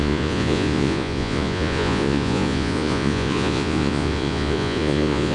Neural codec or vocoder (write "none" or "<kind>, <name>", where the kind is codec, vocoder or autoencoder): vocoder, Vocos